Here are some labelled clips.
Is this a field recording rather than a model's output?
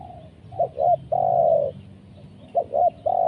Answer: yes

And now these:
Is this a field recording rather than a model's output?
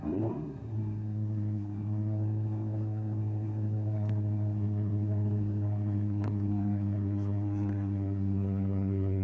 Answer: no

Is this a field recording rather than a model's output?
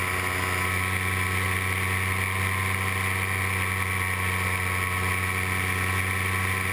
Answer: yes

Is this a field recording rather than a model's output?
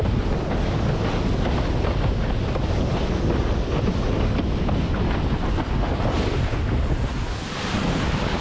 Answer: yes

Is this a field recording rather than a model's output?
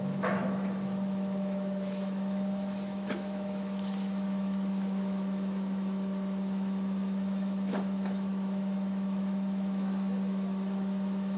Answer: no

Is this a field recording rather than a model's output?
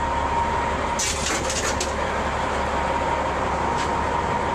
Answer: yes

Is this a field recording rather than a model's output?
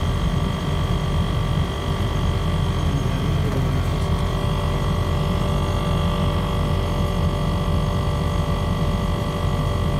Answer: yes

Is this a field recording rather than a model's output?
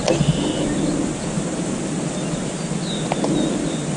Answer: yes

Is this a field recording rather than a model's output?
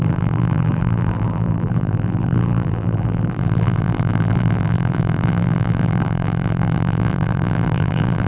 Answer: no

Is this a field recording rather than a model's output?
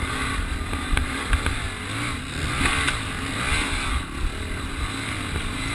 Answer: yes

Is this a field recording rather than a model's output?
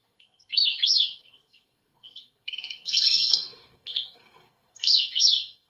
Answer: no